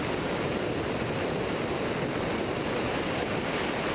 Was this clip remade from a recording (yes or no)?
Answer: yes